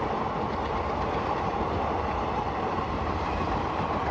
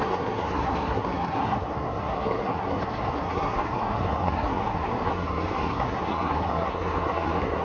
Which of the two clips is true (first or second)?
first